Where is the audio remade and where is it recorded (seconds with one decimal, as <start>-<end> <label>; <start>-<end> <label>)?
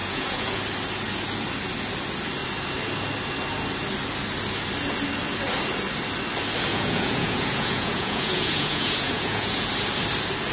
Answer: 0.0-0.6 remade; 0.6-6.7 recorded; 6.7-9.7 remade; 9.7-10.5 recorded